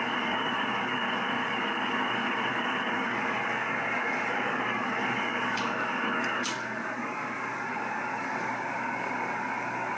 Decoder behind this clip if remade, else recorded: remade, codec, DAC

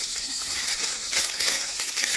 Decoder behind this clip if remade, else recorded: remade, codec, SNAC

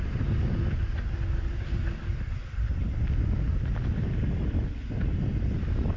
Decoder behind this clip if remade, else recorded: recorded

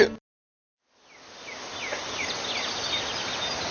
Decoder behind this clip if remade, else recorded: recorded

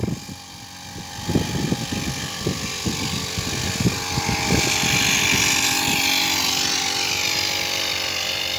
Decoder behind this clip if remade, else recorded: recorded